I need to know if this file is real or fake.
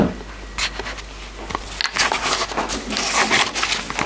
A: real